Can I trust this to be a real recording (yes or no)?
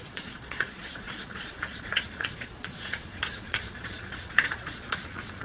no